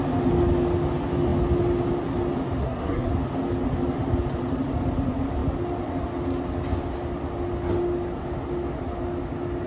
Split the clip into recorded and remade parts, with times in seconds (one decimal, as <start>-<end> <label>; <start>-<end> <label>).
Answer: 0.0-2.6 recorded; 2.6-3.1 remade; 3.1-9.7 recorded